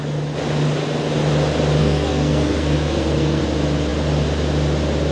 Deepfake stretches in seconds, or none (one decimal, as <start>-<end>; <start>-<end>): 1.8-3.4